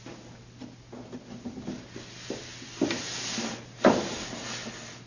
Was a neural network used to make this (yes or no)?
no